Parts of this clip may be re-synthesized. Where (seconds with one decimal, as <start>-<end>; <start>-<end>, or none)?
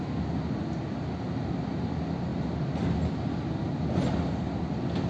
none